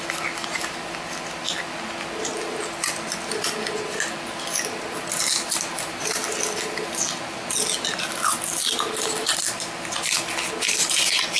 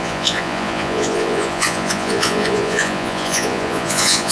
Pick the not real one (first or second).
second